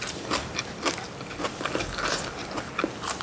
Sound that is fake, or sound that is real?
real